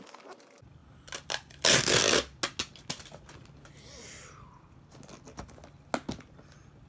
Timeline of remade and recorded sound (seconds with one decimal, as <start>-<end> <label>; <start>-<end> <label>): 0.0-6.9 recorded